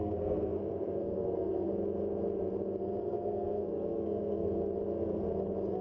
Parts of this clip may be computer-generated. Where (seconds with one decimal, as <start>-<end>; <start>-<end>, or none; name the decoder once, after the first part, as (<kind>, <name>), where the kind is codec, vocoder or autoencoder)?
0.0-1.7 (codec, SNAC); 3.0-4.6